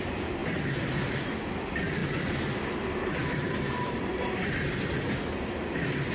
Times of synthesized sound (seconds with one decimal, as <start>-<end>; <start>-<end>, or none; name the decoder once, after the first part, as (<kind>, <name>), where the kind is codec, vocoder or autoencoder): 0.0-0.4 (vocoder, BigVGAN v2); 1.5-6.1